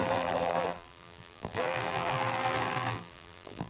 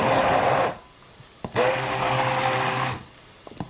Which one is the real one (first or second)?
second